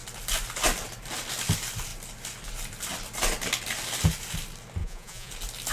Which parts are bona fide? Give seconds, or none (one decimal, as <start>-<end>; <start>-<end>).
0.0-4.8; 5.3-5.7